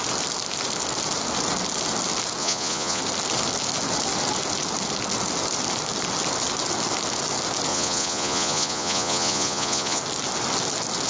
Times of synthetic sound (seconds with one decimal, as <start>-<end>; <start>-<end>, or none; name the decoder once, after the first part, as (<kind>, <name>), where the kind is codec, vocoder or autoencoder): 2.4-3.0 (vocoder, Vocos); 7.7-10.0